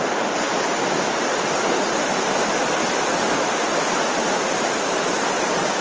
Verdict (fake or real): real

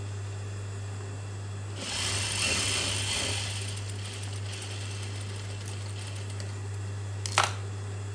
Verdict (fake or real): real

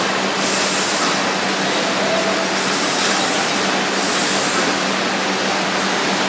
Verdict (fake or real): real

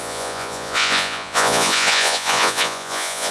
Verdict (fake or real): fake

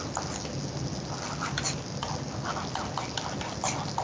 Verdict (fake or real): real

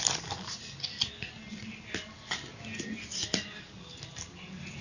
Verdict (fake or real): real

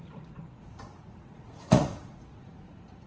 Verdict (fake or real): fake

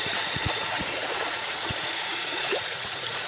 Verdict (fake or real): fake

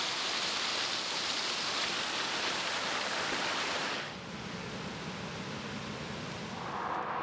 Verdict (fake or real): real